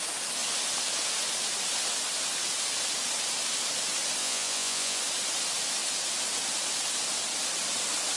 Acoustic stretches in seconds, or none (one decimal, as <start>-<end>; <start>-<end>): 0.0-4.2; 5.0-8.2